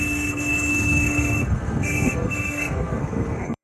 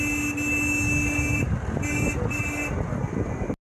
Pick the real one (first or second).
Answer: second